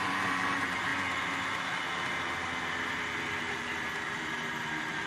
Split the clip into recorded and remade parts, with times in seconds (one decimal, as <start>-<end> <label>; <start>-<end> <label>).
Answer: 0.0-0.9 remade; 0.9-3.4 recorded; 3.4-5.1 remade